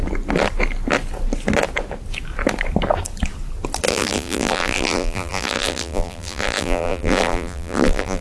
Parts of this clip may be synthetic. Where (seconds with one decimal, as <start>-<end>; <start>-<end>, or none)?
3.9-8.2